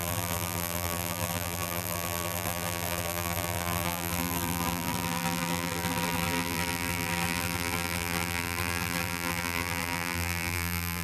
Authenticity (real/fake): fake